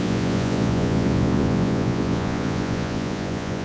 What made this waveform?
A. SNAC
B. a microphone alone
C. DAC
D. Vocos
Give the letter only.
D